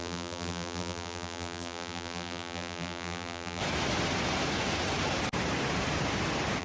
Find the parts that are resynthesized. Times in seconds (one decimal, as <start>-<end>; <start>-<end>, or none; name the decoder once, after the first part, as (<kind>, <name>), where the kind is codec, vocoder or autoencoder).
0.0-3.6 (vocoder, BigVGAN v2)